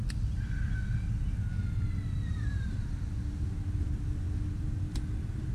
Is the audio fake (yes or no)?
no